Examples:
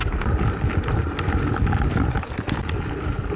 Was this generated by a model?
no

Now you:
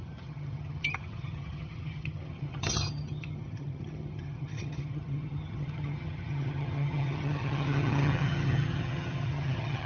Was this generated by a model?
yes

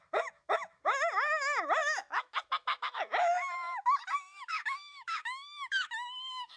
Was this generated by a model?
yes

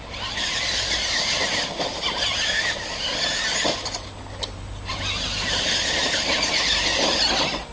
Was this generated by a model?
no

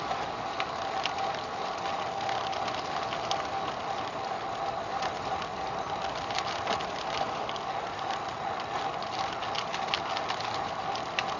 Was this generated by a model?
no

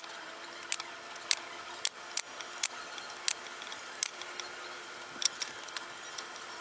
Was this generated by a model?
no